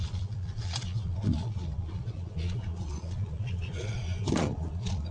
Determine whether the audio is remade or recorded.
remade